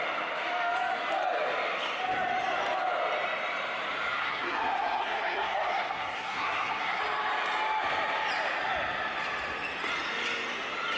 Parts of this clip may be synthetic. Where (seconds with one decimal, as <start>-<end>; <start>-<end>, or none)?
4.2-7.0